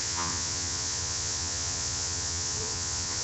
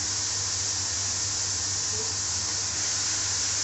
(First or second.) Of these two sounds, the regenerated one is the first